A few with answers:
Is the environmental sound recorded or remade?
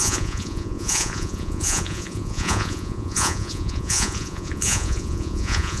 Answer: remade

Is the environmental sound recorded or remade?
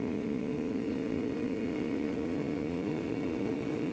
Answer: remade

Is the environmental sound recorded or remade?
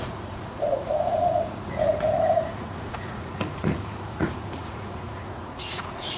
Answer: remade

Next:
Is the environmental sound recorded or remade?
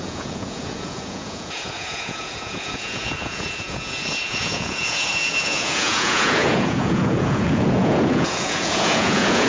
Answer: remade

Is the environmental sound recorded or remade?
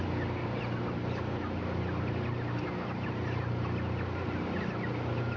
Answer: recorded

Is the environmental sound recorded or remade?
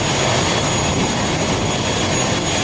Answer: recorded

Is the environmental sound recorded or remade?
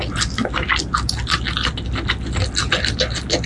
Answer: recorded